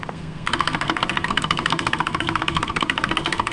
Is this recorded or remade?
remade